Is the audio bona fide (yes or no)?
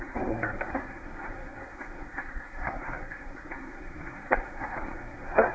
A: no